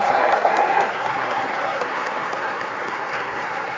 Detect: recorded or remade remade